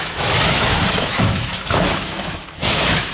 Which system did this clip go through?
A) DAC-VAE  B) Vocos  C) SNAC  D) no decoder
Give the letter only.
A